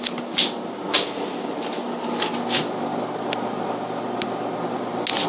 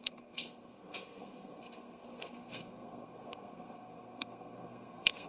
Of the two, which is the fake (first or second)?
second